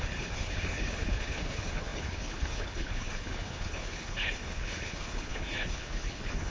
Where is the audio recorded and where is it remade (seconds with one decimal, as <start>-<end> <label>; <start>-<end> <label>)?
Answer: 0.0-6.5 remade